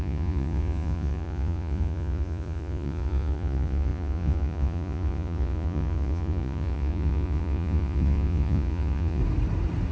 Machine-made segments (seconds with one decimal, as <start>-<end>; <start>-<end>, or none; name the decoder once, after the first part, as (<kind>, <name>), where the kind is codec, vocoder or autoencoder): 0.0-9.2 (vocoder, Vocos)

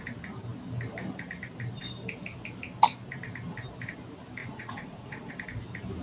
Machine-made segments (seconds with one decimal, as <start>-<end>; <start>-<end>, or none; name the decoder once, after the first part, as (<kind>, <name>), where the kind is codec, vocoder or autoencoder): 4.4-5.3 (vocoder, Vocos)

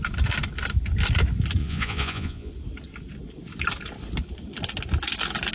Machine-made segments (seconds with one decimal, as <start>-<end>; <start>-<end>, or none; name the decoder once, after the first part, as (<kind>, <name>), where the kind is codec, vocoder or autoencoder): 1.6-2.5 (vocoder, Vocos)

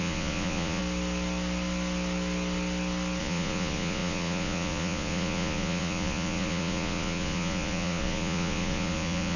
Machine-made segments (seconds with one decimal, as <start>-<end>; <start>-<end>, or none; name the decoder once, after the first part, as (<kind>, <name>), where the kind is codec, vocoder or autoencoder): 0.0-0.8 (vocoder, Vocos); 3.2-9.4

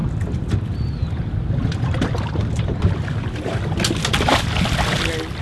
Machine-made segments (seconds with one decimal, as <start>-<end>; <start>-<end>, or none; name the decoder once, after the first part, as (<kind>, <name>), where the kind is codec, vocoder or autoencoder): none

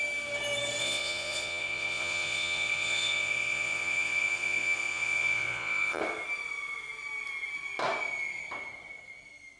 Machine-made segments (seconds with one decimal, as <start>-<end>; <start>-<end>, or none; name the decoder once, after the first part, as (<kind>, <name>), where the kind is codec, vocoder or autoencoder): 0.8-6.0 (vocoder, Vocos)